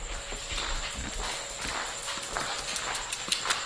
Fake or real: fake